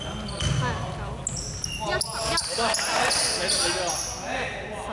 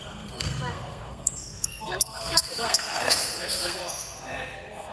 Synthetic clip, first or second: second